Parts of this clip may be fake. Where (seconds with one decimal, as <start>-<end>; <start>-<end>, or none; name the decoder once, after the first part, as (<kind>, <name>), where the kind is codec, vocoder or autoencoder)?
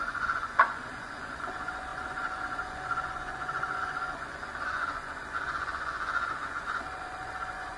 0.0-7.8 (vocoder, Vocos)